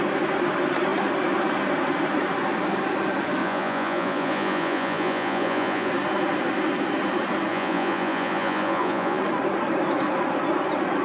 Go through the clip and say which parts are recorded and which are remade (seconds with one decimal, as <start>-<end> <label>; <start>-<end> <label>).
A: 0.0-3.4 recorded; 3.4-5.9 remade; 5.9-7.5 recorded; 7.5-9.2 remade; 9.2-11.0 recorded